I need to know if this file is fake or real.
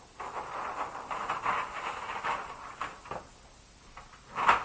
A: real